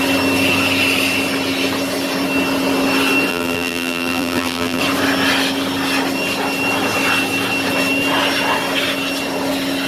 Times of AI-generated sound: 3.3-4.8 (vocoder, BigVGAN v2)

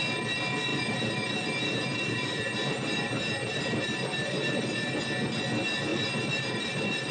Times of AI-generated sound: 0.7-5.0 (vocoder, BigVGAN v2); 5.9-7.1

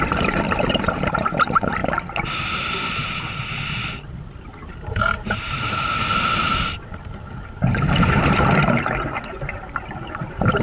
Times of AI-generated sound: 0.0-1.8 (vocoder, BigVGAN v2); 4.4-10.6

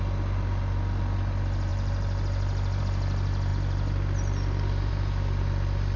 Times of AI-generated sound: 1.7-2.8 (vocoder, BigVGAN v2); 3.5-4.9

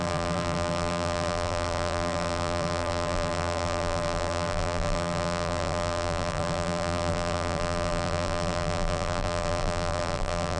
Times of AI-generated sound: 0.0-10.6 (vocoder, BigVGAN v2)

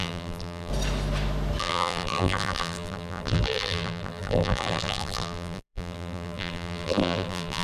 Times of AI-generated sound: 0.0-0.7 (vocoder, BigVGAN v2); 1.6-7.6

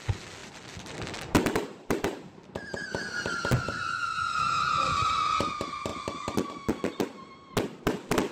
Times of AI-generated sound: 0.4-2.5 (vocoder, BigVGAN v2)